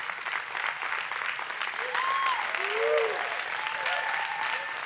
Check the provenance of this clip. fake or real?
real